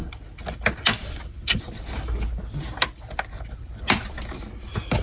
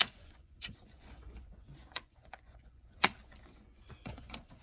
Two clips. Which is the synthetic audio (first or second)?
second